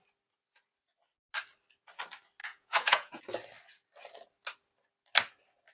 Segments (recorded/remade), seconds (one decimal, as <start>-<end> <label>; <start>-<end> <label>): 0.0-2.4 recorded; 2.4-3.2 remade; 3.2-5.7 recorded